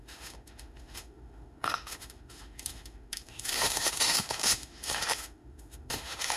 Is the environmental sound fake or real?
fake